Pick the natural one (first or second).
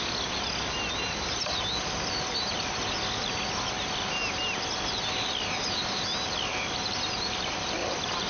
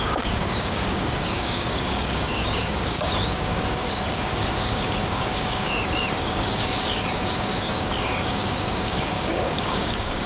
first